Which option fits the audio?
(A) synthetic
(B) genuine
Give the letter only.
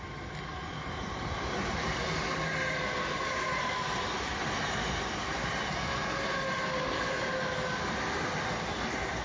B